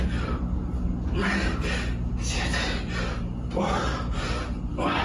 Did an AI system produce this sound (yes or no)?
no